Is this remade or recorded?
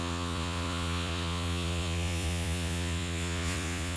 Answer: remade